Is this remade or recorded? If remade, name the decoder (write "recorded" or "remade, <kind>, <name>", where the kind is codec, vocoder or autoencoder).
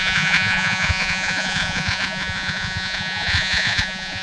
remade, vocoder, Vocos